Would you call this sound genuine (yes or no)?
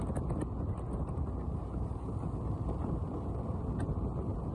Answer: yes